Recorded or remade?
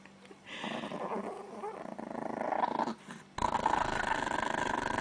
recorded